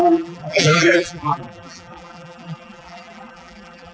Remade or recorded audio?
remade